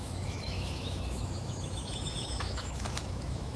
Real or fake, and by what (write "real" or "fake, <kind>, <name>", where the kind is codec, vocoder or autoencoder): fake, autoencoder, DAC-VAE